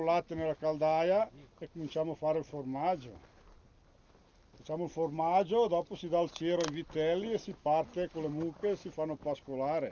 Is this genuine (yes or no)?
yes